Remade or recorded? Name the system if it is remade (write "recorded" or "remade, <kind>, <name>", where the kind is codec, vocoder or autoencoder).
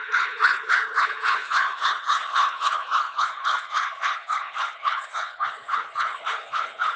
remade, codec, HILCodec